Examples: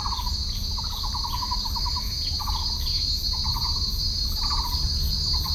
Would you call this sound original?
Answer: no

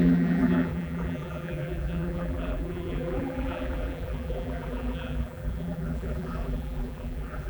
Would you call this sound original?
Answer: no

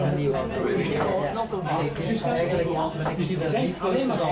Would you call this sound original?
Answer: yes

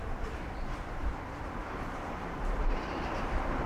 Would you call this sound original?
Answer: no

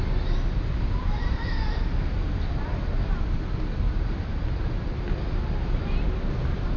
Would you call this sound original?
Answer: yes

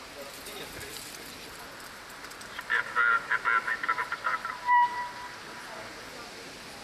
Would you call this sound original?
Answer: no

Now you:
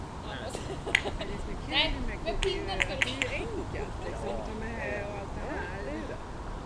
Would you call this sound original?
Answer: yes